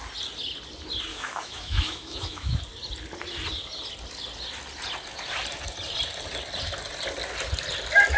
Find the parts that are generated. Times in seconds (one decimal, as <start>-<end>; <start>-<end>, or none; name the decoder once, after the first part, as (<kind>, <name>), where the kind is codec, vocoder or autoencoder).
1.1-2.6 (autoencoder, DAC-VAE)